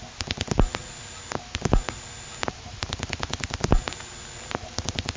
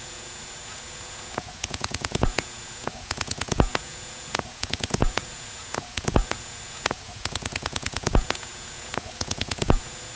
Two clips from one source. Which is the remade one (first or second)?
second